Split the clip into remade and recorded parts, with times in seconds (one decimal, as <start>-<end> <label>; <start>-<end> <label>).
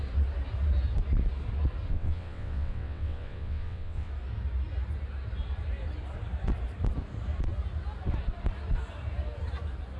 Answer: 0.0-1.9 recorded; 1.9-4.1 remade; 4.1-10.0 recorded